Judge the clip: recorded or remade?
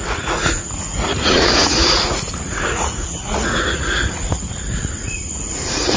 remade